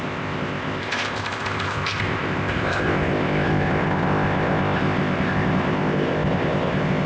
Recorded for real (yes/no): no